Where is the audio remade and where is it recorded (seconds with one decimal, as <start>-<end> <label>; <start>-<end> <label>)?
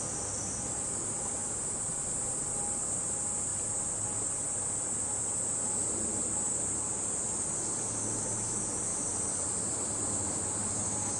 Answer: 0.0-1.4 recorded; 1.4-3.1 remade; 3.1-11.2 recorded